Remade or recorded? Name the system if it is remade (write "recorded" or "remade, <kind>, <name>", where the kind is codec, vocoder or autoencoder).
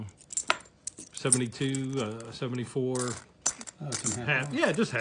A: recorded